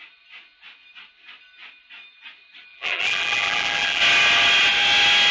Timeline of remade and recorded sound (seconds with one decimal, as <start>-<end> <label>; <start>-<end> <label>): 0.0-2.7 recorded; 2.7-4.0 remade; 4.0-5.3 recorded